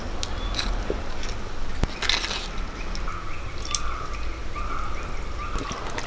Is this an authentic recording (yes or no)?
yes